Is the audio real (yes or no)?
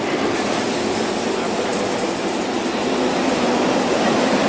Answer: yes